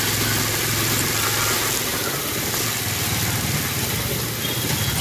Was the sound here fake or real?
real